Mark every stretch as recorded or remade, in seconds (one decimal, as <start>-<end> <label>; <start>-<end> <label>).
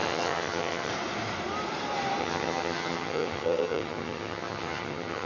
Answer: 0.0-0.9 remade; 0.9-2.2 recorded; 2.2-5.3 remade